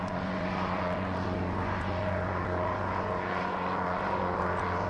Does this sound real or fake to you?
fake